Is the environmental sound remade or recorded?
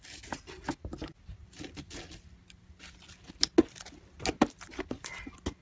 recorded